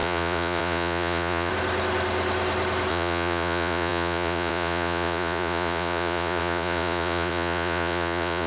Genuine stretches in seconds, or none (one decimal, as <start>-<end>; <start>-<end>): 1.5-2.9